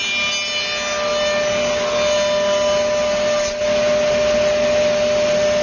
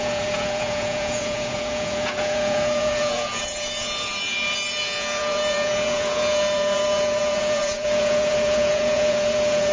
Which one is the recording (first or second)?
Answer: first